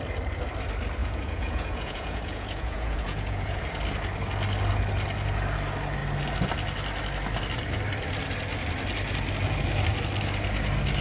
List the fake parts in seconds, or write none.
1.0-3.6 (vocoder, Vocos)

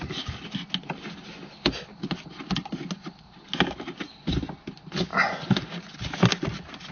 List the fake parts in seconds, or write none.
none

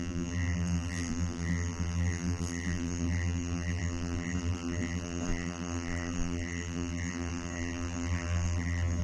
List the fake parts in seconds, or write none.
0.0-9.0 (vocoder, BigVGAN v2)

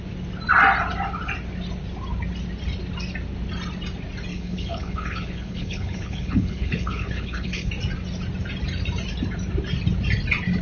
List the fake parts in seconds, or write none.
4.3-7.7 (codec, HILCodec)

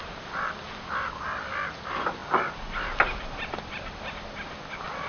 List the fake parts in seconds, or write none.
none

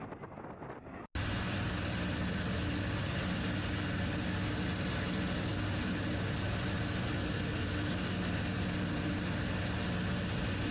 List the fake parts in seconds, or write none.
none